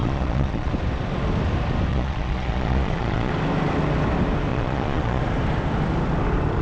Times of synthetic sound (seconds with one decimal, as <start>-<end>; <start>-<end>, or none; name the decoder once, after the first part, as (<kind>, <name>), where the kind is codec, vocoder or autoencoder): 0.0-0.7 (vocoder, Vocos); 1.9-3.3; 4.5-5.2